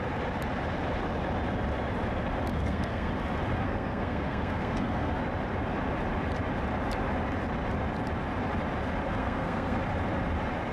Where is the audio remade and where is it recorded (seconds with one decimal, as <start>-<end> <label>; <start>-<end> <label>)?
0.0-2.5 recorded; 2.5-3.1 remade; 3.1-3.6 recorded; 3.6-5.1 remade; 5.1-9.2 recorded; 9.2-9.8 remade; 9.8-10.7 recorded